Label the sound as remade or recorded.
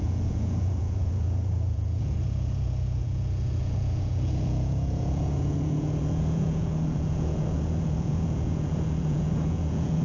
remade